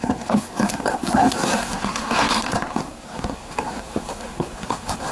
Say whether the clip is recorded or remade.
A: remade